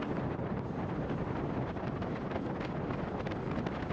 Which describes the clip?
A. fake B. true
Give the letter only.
B